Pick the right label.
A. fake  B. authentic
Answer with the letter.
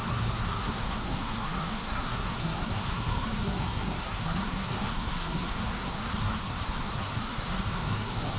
A